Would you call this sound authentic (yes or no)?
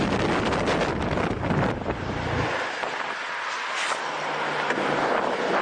yes